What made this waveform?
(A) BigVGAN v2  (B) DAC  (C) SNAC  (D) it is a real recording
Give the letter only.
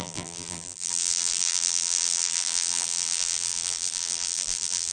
A